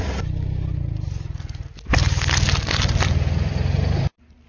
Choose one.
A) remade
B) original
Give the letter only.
B